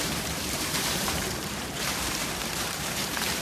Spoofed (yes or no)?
yes